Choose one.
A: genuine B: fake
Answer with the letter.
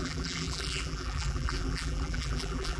B